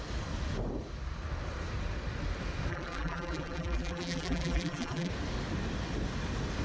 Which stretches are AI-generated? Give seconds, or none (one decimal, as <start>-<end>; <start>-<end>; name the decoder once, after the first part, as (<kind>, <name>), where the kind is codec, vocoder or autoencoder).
2.7-5.1 (vocoder, BigVGAN v2)